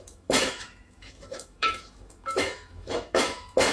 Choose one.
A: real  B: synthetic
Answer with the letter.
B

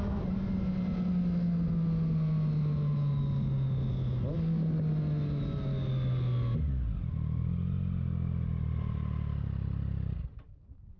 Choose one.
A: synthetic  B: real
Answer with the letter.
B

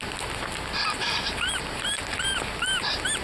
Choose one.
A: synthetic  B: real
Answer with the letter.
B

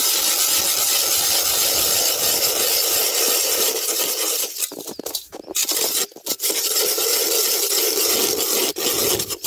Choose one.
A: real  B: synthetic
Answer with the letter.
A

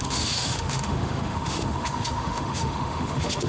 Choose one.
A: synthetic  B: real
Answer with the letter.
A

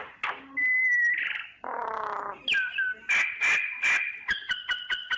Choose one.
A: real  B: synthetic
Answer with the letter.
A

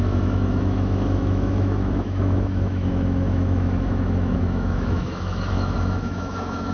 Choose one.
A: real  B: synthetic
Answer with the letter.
B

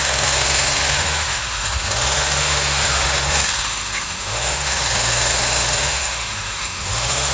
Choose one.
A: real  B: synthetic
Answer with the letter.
B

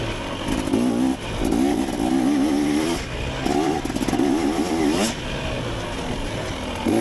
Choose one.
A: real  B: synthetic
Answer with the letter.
A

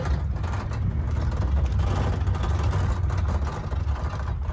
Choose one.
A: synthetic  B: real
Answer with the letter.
B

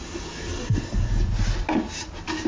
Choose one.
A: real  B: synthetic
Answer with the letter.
A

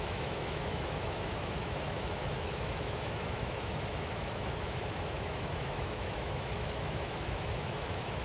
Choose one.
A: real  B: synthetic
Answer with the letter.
B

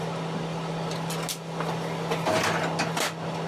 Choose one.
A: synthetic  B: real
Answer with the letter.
B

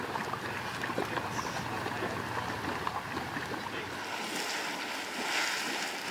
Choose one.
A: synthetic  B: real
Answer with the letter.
B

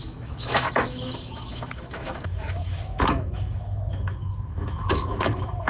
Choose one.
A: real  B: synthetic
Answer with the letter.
B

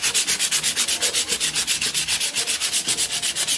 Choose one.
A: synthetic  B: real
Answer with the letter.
B